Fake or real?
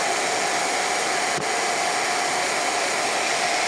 real